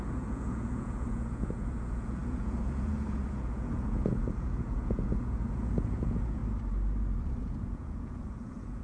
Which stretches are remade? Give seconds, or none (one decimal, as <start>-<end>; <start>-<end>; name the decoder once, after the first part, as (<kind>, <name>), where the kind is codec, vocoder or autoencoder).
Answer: 0.0-6.4 (vocoder, Vocos); 7.4-8.8